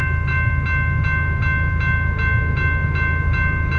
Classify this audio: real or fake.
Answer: real